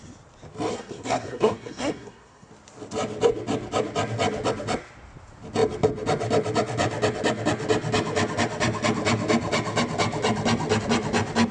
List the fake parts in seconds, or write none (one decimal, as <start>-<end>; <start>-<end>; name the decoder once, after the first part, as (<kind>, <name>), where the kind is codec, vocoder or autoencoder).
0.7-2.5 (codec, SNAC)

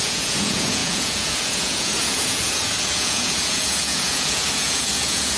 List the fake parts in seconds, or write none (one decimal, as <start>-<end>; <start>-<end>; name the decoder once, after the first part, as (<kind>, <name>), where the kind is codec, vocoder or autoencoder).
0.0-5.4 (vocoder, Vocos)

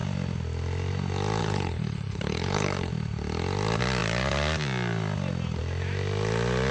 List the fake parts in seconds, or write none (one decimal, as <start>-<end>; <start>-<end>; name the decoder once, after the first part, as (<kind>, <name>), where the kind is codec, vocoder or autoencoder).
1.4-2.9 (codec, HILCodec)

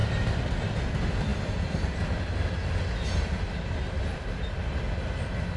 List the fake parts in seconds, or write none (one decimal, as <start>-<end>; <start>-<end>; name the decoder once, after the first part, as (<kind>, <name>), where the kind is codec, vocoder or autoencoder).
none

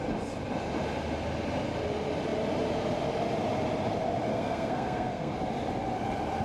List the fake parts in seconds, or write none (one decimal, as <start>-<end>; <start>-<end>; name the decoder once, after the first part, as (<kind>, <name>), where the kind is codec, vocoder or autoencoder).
4.3-5.3 (codec, SNAC)

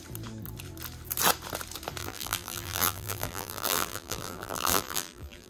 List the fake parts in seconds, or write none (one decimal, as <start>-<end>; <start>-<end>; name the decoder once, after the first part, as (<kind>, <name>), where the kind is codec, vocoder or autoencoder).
2.0-5.5 (vocoder, BigVGAN v2)

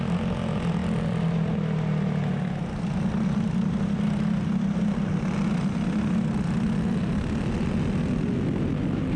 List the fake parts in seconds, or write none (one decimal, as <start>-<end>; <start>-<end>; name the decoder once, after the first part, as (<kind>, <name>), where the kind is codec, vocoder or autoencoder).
none

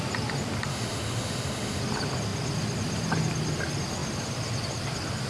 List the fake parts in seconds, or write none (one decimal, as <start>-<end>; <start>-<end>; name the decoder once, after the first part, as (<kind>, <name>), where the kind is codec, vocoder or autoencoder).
0.7-1.8 (autoencoder, DAC-VAE)